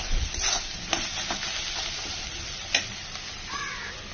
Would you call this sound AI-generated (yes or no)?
no